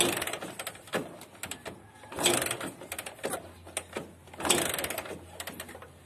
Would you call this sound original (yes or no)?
yes